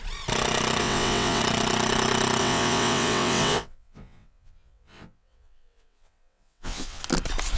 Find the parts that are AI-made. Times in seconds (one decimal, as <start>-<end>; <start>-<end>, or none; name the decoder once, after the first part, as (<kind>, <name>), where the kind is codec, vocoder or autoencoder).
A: 0.8-1.4 (vocoder, WaveNeXt); 2.4-7.0